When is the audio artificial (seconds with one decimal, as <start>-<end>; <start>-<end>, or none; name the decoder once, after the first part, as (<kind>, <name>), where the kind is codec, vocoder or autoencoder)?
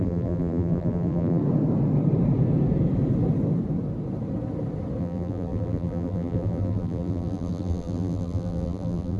0.0-1.4 (vocoder, BigVGAN v2); 5.0-9.2